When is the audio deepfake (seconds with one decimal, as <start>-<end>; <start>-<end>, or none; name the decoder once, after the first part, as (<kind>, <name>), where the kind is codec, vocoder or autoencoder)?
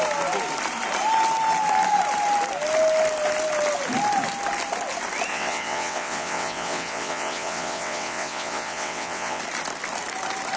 5.3-9.4 (vocoder, WaveNeXt)